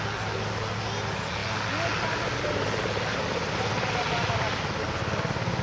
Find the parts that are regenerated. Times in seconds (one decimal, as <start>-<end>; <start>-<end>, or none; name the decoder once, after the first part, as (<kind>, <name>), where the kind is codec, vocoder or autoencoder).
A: none